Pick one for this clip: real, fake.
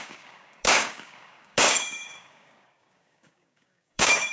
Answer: fake